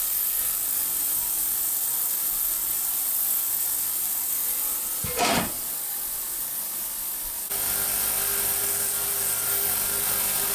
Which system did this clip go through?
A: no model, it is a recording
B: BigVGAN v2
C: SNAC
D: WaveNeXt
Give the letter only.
A